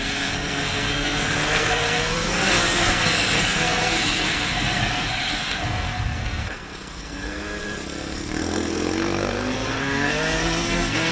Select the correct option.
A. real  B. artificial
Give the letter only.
B